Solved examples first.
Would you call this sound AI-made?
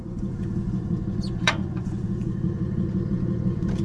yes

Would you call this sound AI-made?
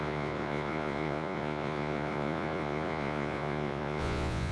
yes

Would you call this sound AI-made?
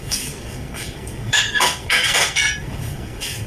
yes